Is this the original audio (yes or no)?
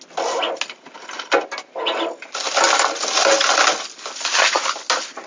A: yes